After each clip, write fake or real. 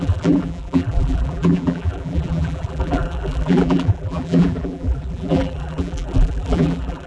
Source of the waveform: fake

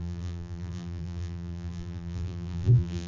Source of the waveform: fake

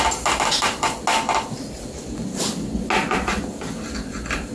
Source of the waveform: real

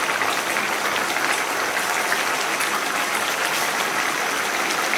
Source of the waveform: real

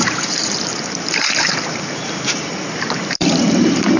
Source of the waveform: fake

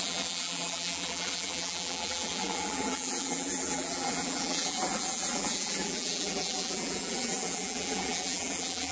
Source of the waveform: fake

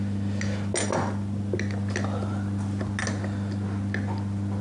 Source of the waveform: real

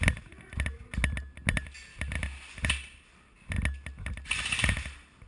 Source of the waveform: real